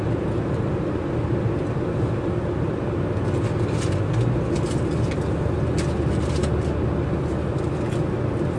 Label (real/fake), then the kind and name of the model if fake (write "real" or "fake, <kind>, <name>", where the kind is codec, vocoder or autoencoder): real